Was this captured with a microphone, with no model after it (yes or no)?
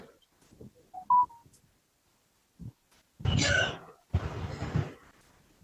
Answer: yes